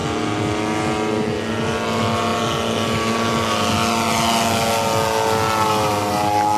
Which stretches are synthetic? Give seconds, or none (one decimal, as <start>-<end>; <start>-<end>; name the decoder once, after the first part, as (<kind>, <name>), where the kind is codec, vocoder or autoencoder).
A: none